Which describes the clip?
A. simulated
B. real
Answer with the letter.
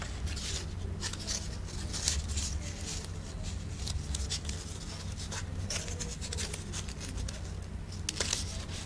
B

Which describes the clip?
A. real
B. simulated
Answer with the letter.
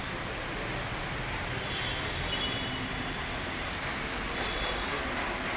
A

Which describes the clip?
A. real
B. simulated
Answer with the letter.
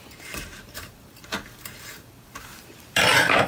B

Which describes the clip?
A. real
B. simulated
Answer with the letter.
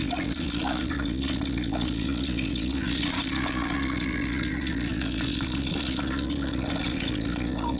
B